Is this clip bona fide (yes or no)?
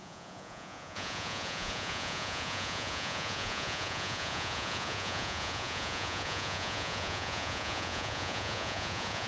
no